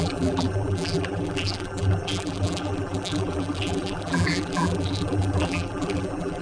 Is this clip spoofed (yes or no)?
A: yes